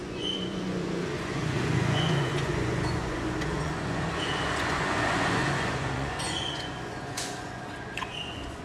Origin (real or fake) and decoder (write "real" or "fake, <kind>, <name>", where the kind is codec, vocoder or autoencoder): fake, vocoder, Vocos